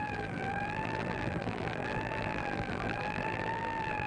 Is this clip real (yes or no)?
no